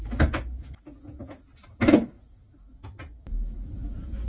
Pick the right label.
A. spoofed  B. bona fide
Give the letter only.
B